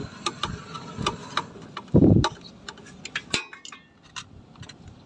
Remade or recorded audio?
recorded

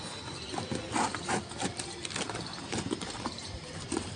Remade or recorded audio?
recorded